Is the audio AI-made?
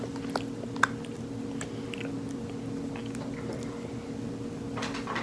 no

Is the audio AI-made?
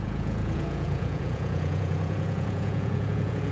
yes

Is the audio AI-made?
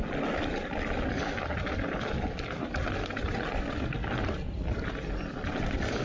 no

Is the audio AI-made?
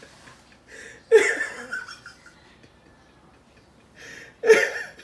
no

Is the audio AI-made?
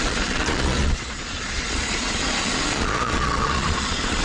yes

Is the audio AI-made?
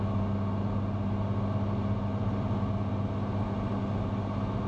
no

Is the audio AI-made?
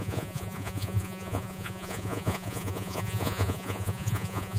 yes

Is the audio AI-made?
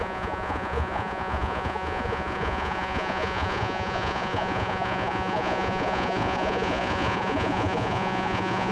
yes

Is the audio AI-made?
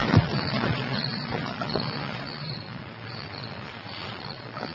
yes